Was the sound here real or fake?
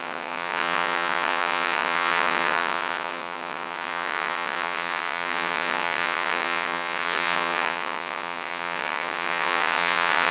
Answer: fake